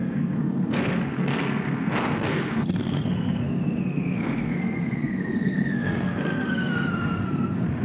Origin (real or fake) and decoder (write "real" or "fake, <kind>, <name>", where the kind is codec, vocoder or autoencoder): fake, codec, SNAC